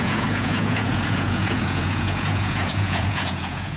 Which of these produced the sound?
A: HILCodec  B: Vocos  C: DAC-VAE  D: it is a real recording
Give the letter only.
B